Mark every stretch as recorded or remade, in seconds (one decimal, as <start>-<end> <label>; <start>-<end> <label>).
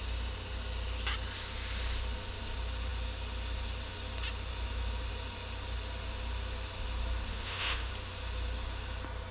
0.0-7.3 recorded; 7.3-7.9 remade; 7.9-9.3 recorded